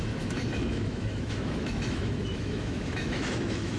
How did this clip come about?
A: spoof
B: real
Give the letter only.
A